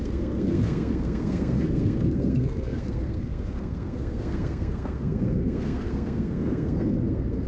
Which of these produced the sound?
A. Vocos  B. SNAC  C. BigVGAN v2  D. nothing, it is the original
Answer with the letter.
B